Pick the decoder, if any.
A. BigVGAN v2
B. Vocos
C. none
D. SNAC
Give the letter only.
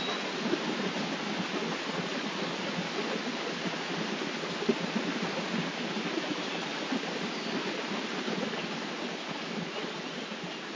C